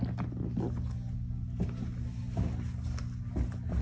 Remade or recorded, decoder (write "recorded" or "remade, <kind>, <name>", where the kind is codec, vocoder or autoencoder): recorded